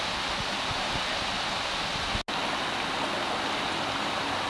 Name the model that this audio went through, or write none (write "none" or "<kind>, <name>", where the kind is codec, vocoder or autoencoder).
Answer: none